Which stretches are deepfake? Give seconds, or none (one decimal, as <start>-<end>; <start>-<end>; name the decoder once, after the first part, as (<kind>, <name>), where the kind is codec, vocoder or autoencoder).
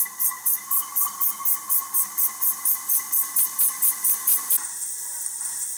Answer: none